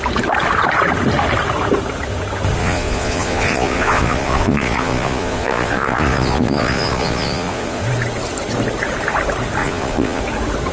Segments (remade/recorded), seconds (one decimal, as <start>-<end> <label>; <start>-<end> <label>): 0.0-2.6 recorded; 2.6-7.8 remade; 7.8-9.6 recorded; 9.6-10.2 remade; 10.2-10.7 recorded